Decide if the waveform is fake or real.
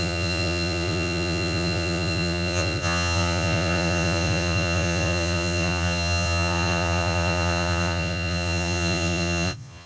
fake